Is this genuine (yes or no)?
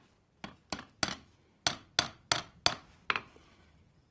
yes